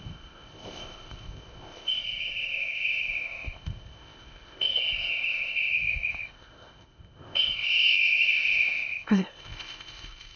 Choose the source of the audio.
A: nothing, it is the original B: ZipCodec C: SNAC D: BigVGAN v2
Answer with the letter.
B